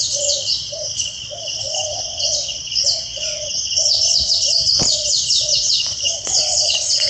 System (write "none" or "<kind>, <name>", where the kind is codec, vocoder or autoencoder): vocoder, Vocos